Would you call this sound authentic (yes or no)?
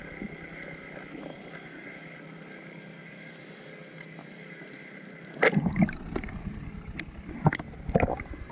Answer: yes